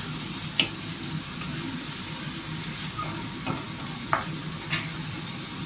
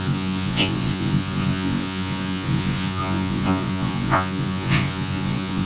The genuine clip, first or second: first